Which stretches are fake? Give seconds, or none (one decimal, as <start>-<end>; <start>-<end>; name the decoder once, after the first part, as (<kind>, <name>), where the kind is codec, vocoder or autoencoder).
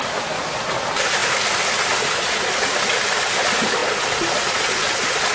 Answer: none